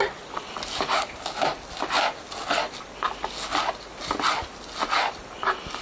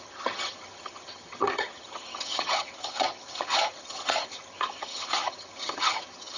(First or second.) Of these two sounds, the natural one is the first